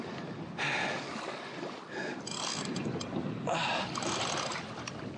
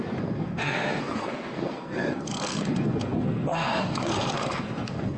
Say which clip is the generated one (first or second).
second